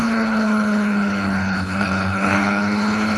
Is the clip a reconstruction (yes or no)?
yes